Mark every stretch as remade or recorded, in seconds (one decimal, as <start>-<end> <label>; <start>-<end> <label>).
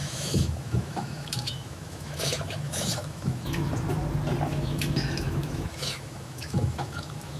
0.0-3.7 remade; 3.7-4.5 recorded; 4.5-7.4 remade